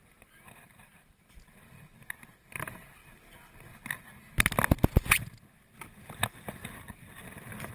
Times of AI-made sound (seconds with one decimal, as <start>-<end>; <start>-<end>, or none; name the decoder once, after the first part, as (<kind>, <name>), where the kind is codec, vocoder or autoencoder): none